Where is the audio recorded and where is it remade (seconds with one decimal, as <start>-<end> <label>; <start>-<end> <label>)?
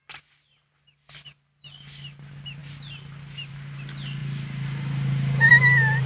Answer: 0.0-6.1 recorded